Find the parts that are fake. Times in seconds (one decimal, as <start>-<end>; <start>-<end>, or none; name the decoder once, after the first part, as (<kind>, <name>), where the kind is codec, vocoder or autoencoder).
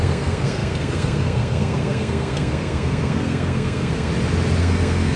0.0-4.1 (codec, SNAC); 4.6-5.2